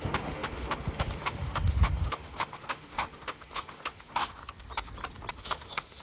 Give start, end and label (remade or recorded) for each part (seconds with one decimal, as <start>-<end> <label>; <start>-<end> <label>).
0.0-4.4 remade; 4.4-5.3 recorded; 5.3-6.0 remade